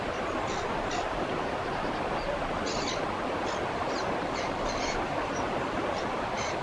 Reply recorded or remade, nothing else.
recorded